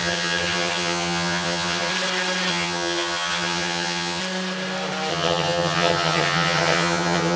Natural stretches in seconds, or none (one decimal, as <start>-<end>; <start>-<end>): 1.9-2.5; 4.2-5.1